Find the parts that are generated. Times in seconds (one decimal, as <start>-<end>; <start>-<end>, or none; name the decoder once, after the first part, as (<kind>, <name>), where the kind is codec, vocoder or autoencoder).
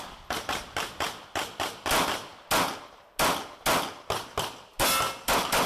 none